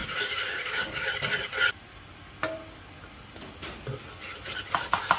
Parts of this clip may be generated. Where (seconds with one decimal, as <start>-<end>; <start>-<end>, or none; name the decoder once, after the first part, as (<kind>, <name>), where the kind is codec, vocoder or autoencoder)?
0.0-1.1 (codec, DAC)